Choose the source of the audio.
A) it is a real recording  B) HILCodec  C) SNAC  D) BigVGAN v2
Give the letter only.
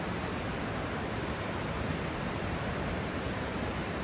D